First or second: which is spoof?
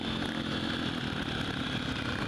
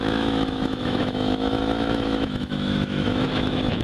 second